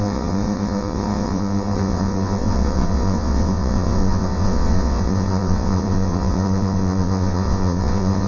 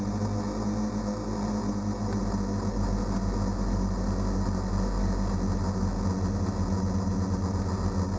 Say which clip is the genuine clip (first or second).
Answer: second